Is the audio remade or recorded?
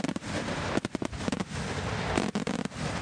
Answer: recorded